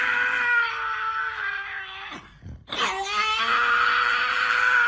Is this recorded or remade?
recorded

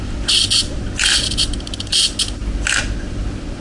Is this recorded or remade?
recorded